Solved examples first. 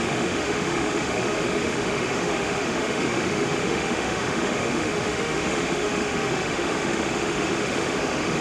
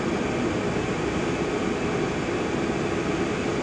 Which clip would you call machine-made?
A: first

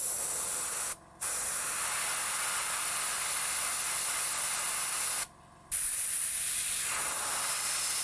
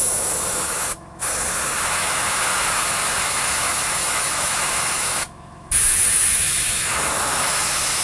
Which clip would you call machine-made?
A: second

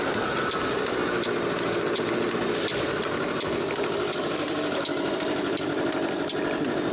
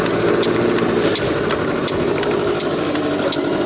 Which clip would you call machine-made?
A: first